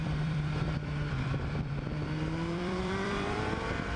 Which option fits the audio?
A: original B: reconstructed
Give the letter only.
B